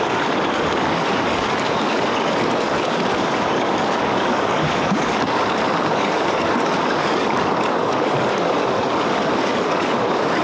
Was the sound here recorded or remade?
remade